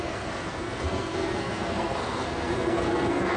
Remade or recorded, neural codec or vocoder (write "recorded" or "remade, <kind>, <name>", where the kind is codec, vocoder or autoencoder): remade, codec, SNAC